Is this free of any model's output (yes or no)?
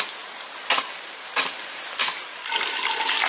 yes